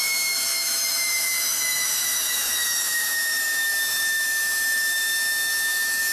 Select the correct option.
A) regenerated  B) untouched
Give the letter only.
A